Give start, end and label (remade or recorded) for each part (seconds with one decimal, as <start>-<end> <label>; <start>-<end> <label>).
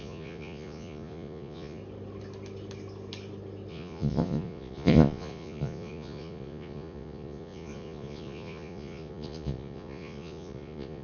0.0-1.8 remade; 1.8-3.7 recorded; 3.7-11.0 remade